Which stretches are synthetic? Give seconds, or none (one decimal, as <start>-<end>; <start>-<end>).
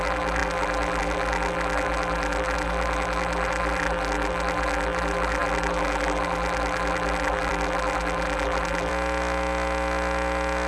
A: 0.0-8.9